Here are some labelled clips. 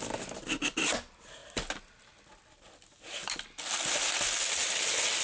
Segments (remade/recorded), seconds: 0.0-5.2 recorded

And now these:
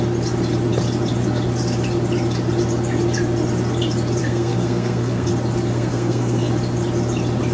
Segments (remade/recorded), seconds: 0.0-4.2 recorded; 4.2-5.3 remade; 5.3-5.7 recorded; 5.7-6.5 remade; 6.5-7.5 recorded

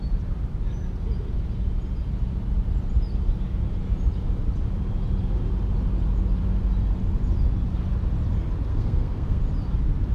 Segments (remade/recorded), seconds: 0.0-8.7 recorded; 8.7-9.4 remade; 9.4-10.1 recorded

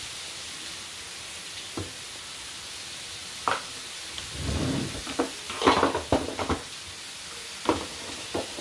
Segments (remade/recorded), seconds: 0.0-8.6 recorded

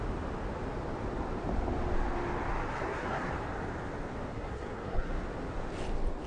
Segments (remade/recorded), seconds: 0.0-2.8 recorded; 2.8-3.3 remade; 3.3-4.3 recorded; 4.3-5.1 remade; 5.1-6.3 recorded

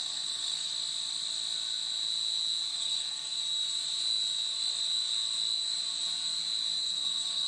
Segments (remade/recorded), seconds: 0.0-0.7 remade; 0.7-2.7 recorded; 2.7-3.4 remade; 3.4-6.8 recorded; 6.8-7.5 remade

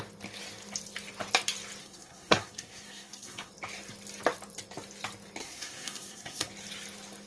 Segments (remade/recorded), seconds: 0.0-1.8 recorded; 1.8-3.5 remade; 3.5-5.4 recorded; 5.4-6.5 remade; 6.5-7.3 recorded

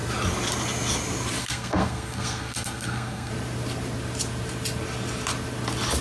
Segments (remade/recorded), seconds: 0.0-1.4 recorded; 1.4-3.3 remade; 3.3-6.0 recorded